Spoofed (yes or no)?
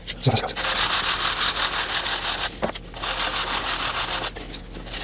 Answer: no